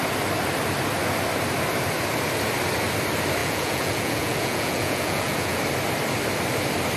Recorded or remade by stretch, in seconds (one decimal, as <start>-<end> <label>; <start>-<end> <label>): 0.0-3.4 recorded; 3.4-5.6 remade; 5.6-7.0 recorded